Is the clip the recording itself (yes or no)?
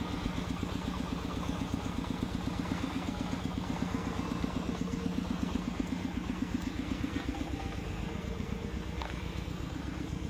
no